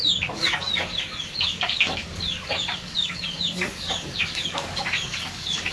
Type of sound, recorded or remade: remade